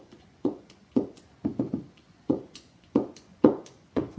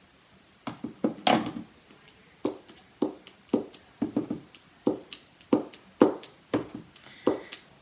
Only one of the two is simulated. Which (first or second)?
first